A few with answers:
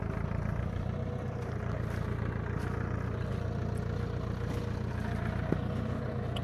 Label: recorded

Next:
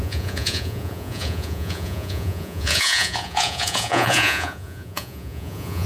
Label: remade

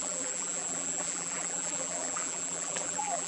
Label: remade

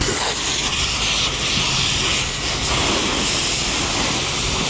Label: recorded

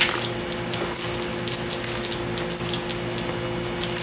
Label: recorded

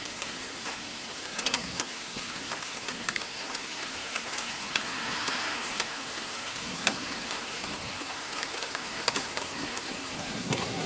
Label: remade